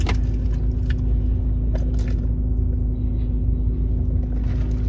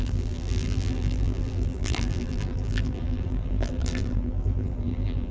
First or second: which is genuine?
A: first